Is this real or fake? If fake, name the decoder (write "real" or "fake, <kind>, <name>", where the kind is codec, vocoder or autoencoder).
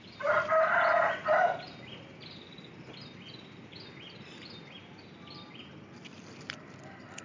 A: fake, vocoder, BigVGAN v2